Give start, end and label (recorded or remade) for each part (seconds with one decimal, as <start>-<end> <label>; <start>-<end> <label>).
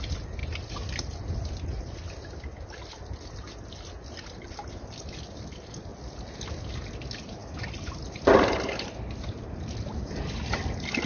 0.0-11.1 recorded